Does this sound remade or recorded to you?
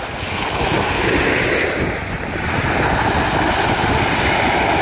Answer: recorded